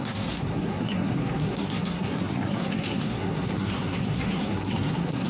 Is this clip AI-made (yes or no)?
yes